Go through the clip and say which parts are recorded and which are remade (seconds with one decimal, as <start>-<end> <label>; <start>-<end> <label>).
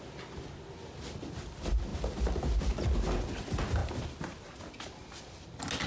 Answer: 0.0-5.9 recorded